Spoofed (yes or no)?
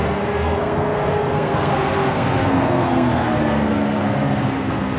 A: yes